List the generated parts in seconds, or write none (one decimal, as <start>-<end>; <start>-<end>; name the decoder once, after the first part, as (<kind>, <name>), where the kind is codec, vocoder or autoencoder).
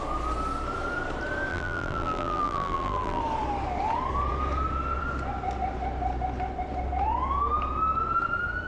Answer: 1.5-3.2 (vocoder, BigVGAN v2)